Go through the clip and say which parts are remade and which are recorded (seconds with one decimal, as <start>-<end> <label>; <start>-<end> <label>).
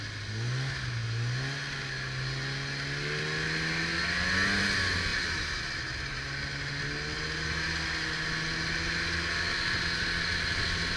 0.0-11.0 recorded